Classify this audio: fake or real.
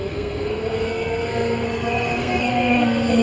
fake